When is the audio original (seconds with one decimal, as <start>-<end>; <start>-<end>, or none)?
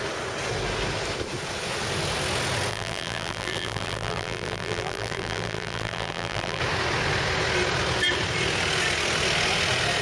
0.0-2.7; 6.6-10.0